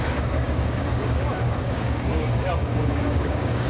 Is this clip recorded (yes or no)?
no